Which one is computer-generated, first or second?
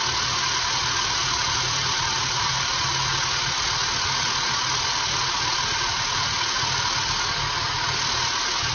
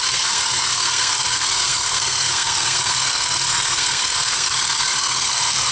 second